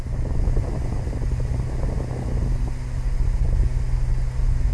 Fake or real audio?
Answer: real